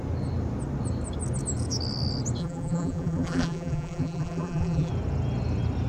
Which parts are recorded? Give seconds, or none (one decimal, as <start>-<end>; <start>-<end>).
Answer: 0.0-2.4; 4.9-5.9